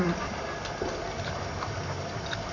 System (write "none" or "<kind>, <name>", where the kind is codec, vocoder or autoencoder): vocoder, BigVGAN v2